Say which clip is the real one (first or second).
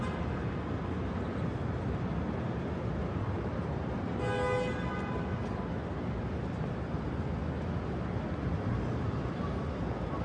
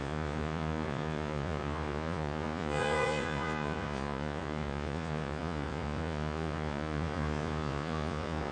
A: first